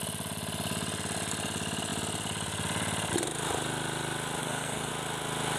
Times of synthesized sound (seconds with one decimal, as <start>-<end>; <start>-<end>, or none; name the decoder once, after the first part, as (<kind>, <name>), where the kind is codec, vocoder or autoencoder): 4.4-4.9 (codec, SNAC)